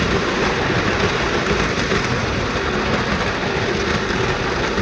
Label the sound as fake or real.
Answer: real